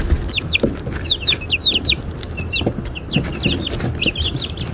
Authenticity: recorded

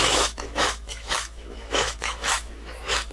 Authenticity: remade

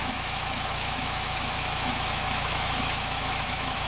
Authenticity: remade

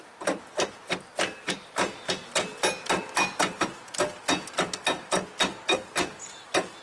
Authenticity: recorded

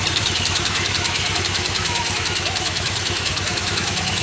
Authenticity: remade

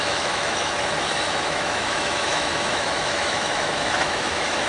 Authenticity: remade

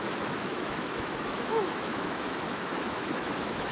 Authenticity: remade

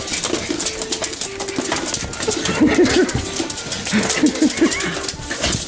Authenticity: recorded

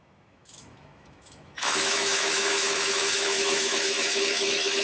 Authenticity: remade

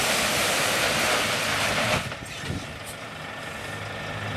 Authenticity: recorded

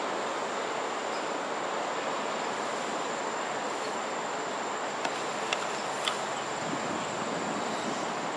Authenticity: recorded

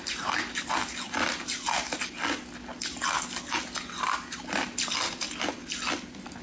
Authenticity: recorded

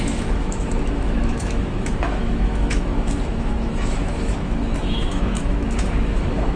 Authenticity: remade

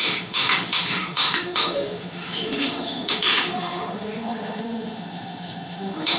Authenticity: remade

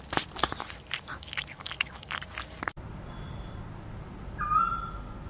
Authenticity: recorded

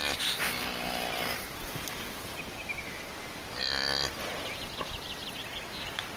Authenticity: recorded